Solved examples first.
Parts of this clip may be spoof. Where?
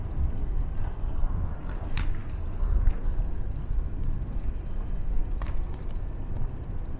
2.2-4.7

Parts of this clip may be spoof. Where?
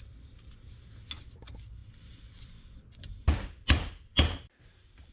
none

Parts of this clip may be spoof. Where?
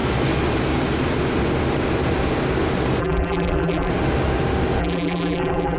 3.0-3.9; 4.8-5.8